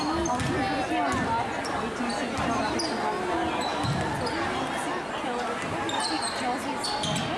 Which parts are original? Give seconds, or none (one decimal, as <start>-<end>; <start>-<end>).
0.0-7.4